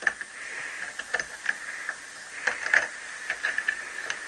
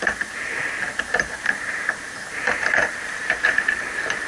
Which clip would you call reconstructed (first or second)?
second